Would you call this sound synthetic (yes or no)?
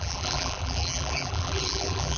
yes